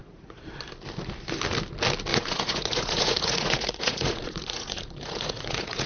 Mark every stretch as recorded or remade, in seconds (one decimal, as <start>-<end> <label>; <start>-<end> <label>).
0.0-0.6 remade; 0.6-2.1 recorded; 2.1-5.9 remade